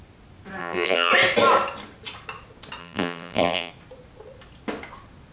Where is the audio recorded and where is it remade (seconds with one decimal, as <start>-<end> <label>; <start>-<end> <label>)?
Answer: 0.0-0.6 recorded; 0.6-1.1 remade; 1.1-2.8 recorded; 2.8-3.7 remade; 3.7-5.3 recorded